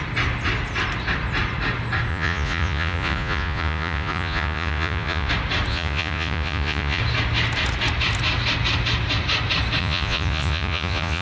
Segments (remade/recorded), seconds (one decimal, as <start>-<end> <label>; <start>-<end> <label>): 0.0-2.1 recorded; 2.1-5.3 remade; 5.3-5.7 recorded; 5.7-7.0 remade; 7.0-9.8 recorded; 9.8-11.2 remade